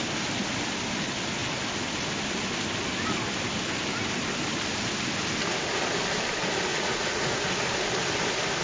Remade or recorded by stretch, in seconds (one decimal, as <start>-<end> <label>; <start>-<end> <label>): 0.0-6.7 recorded; 6.7-7.4 remade; 7.4-8.6 recorded